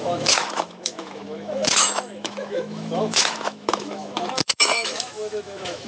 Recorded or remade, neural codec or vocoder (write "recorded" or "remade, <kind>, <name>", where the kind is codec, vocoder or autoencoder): remade, autoencoder, DAC-VAE